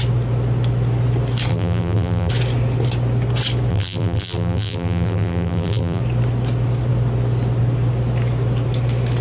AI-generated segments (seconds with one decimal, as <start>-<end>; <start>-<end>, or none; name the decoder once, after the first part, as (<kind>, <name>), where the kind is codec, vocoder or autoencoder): 1.5-2.3 (vocoder, BigVGAN v2); 3.7-6.0